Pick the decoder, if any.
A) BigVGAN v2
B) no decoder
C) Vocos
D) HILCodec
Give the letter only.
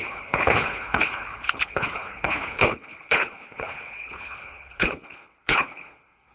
D